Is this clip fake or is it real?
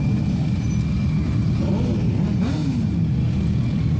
real